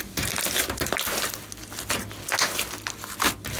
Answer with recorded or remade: recorded